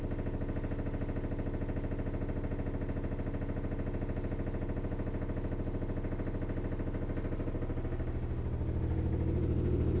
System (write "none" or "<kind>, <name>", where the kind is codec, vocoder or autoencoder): none